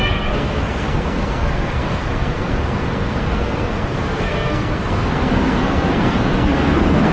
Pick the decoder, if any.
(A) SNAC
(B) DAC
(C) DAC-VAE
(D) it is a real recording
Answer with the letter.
A